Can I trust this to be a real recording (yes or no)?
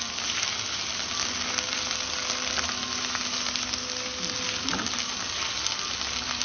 yes